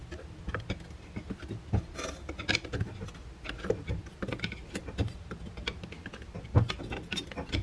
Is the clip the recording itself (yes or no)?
yes